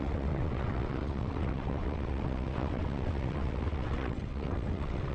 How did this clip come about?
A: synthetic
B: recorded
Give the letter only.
A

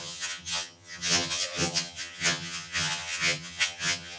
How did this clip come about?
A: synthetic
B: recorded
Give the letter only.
A